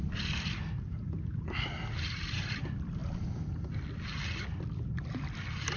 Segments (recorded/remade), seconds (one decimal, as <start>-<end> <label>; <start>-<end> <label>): 0.0-5.8 recorded

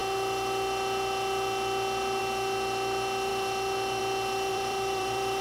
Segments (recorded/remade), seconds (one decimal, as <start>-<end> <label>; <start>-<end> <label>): 0.0-4.5 recorded; 4.5-5.4 remade

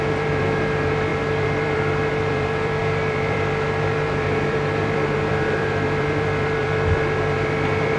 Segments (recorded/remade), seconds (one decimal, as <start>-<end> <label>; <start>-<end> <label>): 0.0-8.0 remade

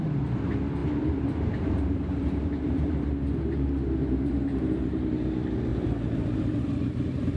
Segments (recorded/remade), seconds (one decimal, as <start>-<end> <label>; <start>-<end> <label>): 0.0-0.8 recorded; 0.8-4.3 remade; 4.3-5.7 recorded; 5.7-7.4 remade

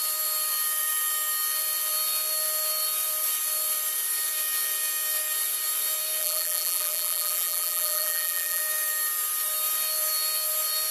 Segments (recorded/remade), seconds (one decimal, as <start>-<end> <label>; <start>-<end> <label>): 0.0-6.2 recorded; 6.2-8.6 remade; 8.6-10.9 recorded

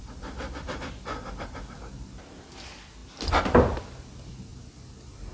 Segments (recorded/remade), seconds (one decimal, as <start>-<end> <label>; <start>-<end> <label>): 0.0-4.5 recorded; 4.5-5.3 remade

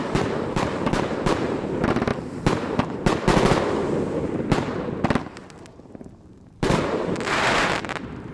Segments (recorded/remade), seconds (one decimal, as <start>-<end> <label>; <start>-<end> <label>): 0.0-2.1 remade; 2.1-5.6 recorded; 5.6-8.3 remade

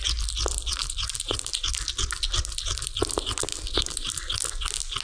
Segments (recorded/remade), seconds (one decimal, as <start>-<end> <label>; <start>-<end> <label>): 0.0-0.8 recorded; 0.8-1.6 remade; 1.6-3.5 recorded; 3.5-4.1 remade; 4.1-5.0 recorded